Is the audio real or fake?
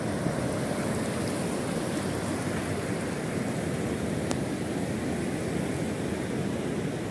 real